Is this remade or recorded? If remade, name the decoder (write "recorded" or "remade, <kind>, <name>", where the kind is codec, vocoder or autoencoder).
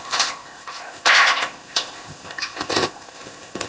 remade, codec, ZipCodec